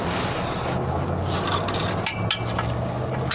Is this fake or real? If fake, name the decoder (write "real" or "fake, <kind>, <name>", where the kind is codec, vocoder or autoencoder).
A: real